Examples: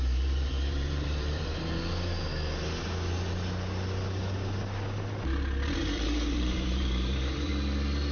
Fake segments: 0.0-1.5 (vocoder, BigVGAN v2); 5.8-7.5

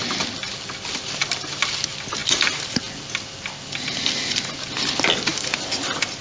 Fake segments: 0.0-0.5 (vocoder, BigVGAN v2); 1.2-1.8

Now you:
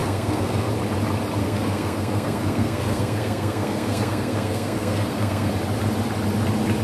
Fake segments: 0.0-0.7 (codec, SNAC); 1.4-5.5